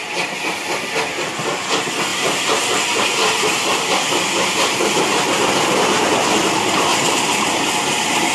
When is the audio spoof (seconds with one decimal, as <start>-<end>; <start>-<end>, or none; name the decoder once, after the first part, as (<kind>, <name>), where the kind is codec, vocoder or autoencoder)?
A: 2.1-4.8 (vocoder, BigVGAN v2); 6.9-7.6